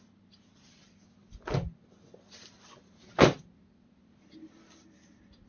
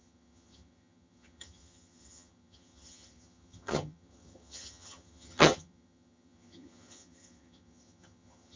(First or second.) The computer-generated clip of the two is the second